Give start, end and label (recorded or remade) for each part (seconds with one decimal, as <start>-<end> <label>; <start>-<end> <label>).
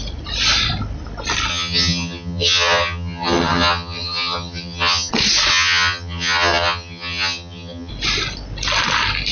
0.0-1.5 recorded; 1.5-5.1 remade; 5.1-5.5 recorded; 5.5-7.9 remade; 7.9-9.3 recorded